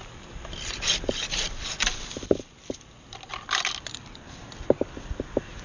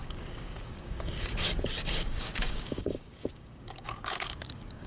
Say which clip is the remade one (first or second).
second